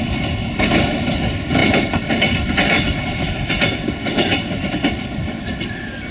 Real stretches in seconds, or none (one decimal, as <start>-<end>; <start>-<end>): 0.0-6.1